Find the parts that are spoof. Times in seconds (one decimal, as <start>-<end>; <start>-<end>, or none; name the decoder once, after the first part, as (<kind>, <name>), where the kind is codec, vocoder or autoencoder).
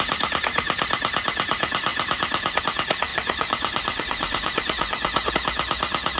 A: 3.1-5.3 (vocoder, Vocos)